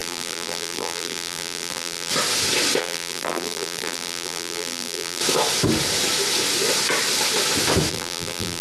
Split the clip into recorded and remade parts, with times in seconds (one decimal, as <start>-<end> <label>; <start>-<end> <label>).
0.0-2.1 remade; 2.1-2.8 recorded; 2.8-5.2 remade; 5.2-7.9 recorded; 7.9-8.6 remade